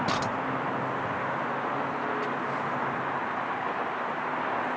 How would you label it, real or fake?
real